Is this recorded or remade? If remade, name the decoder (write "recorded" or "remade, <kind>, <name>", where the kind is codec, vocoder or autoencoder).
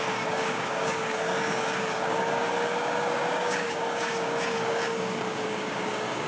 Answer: remade, codec, DAC